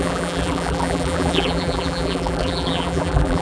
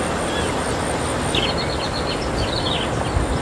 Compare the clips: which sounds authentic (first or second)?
second